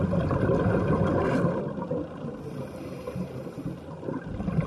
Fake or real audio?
real